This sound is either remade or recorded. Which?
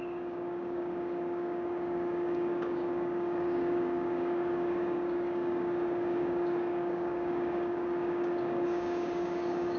remade